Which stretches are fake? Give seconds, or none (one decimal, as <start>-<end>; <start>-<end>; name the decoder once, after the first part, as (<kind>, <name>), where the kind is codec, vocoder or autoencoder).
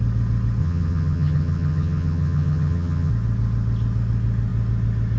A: 0.6-3.1 (vocoder, HiFi-GAN)